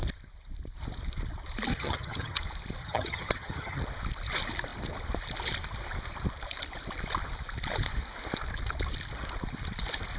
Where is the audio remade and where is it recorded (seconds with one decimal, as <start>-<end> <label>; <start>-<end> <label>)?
0.0-1.7 recorded; 1.7-2.4 remade; 2.4-2.8 recorded; 2.8-3.8 remade; 3.8-10.2 recorded